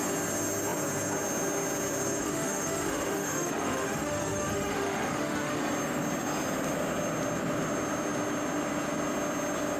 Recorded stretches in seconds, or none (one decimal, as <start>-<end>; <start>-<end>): 0.0-2.2; 5.6-9.8